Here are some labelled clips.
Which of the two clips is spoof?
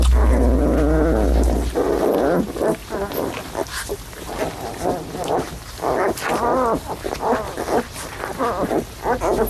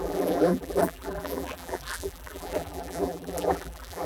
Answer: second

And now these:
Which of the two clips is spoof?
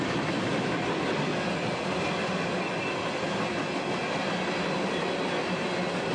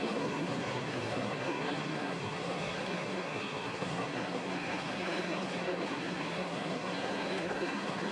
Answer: second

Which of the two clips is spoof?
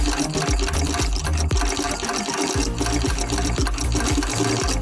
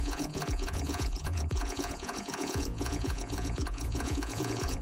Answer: second